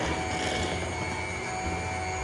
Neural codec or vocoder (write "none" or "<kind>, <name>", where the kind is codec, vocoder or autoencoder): none